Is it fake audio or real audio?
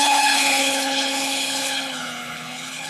fake